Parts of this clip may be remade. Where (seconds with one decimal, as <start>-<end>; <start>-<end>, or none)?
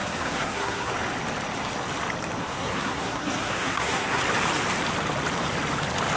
0.0-0.9; 2.4-4.2